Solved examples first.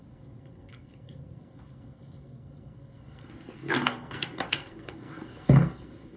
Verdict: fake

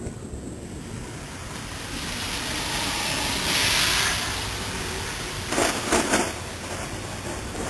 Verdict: real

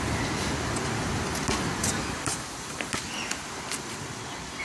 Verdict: real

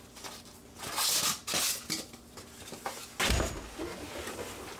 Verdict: real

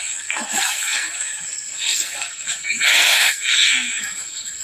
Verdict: fake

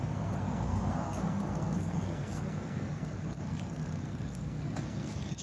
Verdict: fake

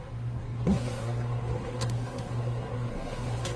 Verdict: fake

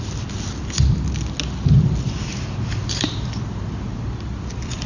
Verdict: real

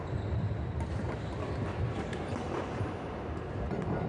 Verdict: real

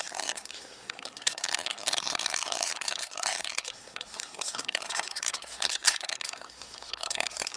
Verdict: fake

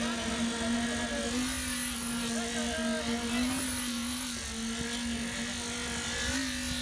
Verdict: real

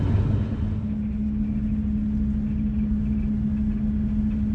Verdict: real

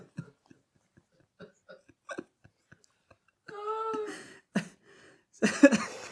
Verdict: real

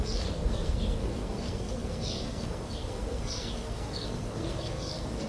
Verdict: fake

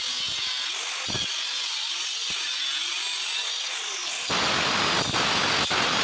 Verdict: real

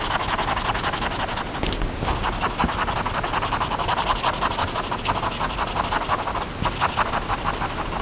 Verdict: real